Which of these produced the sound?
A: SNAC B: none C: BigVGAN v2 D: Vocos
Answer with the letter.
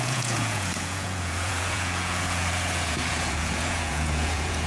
D